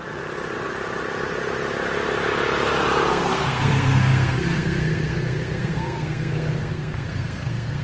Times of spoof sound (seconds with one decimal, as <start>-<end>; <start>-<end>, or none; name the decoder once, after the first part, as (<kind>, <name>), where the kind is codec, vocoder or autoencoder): 3.1-7.8 (codec, SNAC)